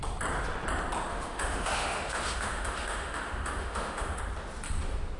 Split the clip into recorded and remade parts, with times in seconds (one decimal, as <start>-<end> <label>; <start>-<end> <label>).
0.0-1.1 recorded; 1.1-4.2 remade; 4.2-5.2 recorded